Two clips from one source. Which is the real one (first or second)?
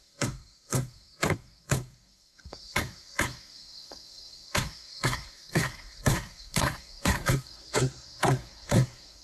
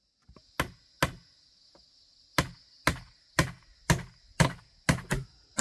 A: second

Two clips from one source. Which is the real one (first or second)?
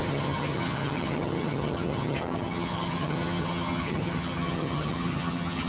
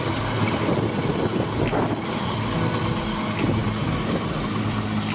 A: second